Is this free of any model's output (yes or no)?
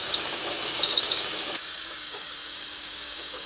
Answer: no